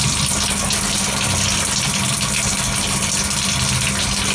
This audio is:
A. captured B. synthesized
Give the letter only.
A